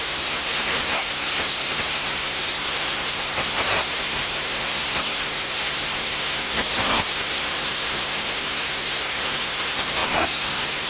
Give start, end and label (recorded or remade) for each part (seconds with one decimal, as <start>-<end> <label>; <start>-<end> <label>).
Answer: 0.0-10.9 remade